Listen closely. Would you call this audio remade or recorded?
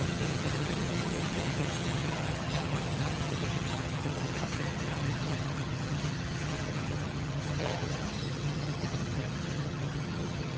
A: remade